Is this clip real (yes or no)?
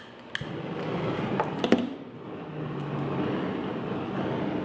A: yes